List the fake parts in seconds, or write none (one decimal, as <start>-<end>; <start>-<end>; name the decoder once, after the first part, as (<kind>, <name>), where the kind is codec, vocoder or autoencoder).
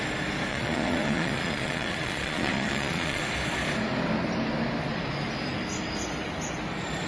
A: 0.5-3.2 (vocoder, Vocos)